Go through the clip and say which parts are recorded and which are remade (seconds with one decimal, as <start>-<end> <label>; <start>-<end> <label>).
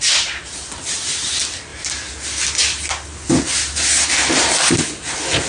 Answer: 0.0-5.5 recorded